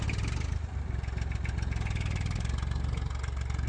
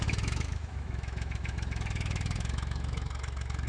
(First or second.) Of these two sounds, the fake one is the second